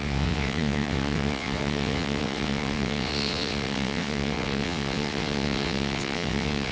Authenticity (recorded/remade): remade